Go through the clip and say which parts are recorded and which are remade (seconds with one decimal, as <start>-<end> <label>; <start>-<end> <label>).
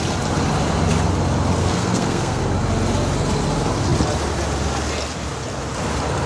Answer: 0.0-1.6 recorded; 1.6-2.4 remade; 2.4-6.3 recorded